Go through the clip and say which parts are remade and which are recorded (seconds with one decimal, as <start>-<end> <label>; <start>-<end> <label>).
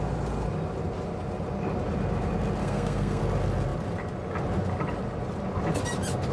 0.0-2.6 recorded; 2.6-3.2 remade; 3.2-6.3 recorded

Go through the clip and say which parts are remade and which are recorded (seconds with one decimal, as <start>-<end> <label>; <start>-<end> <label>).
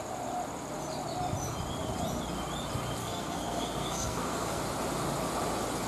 0.0-3.0 recorded; 3.0-4.6 remade; 4.6-5.9 recorded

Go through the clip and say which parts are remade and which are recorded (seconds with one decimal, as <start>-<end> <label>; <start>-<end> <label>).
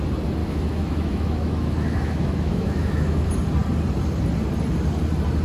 0.0-0.4 recorded; 0.4-3.3 remade; 3.3-5.4 recorded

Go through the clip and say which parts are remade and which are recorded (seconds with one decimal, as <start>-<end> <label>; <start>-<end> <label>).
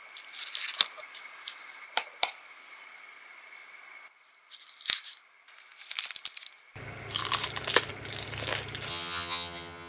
0.0-8.9 recorded; 8.9-9.9 remade